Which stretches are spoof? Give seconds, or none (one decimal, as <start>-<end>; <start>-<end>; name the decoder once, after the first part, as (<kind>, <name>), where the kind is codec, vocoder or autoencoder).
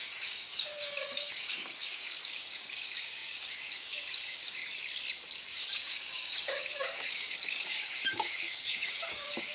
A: 0.0-4.6 (codec, DAC); 5.4-9.5